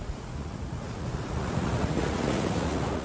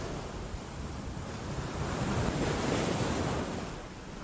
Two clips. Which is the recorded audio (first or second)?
second